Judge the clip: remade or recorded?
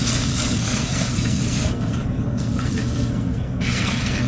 remade